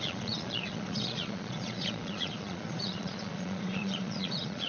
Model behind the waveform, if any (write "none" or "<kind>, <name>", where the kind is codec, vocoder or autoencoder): vocoder, Vocos